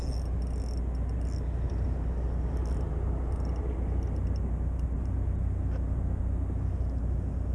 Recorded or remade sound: recorded